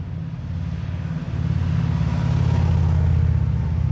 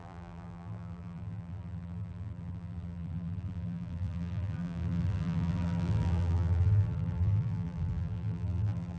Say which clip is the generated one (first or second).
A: second